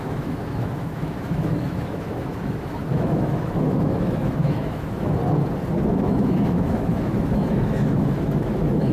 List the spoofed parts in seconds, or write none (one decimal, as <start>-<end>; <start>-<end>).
0.0-5.2; 5.9-8.9